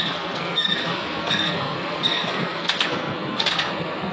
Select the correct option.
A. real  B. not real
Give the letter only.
B